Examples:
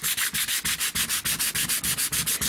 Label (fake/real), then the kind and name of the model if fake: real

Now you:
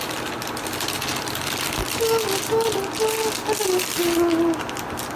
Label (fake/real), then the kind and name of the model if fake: real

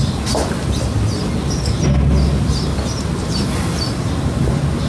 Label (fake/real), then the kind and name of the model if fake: real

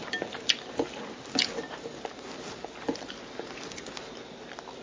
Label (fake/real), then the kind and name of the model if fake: real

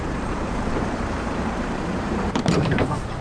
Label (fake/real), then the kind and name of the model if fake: fake, vocoder, BigVGAN v2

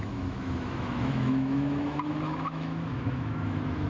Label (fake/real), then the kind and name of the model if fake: fake, autoencoder, DAC-VAE